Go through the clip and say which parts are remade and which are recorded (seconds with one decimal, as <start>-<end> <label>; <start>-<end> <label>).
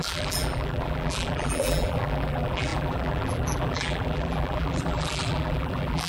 0.0-6.1 remade